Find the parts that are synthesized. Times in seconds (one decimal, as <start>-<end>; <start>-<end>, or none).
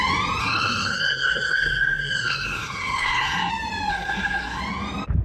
0.4-3.5; 3.9-4.6